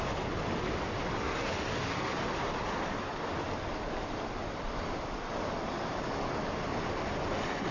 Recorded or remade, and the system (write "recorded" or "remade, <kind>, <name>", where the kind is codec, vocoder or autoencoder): recorded